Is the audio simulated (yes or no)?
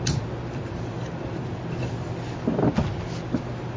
no